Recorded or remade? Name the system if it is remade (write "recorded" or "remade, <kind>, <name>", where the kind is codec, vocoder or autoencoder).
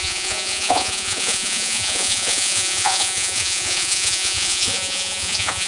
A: remade, vocoder, Vocos